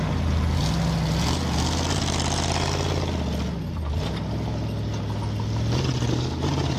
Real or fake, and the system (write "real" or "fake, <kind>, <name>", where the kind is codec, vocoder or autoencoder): real